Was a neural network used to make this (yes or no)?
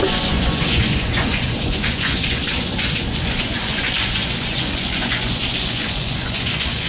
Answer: yes